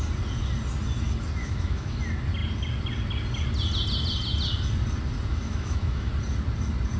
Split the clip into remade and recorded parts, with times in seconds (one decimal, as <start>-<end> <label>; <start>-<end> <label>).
0.0-1.4 recorded; 1.4-2.0 remade; 2.0-5.3 recorded; 5.3-6.1 remade; 6.1-7.0 recorded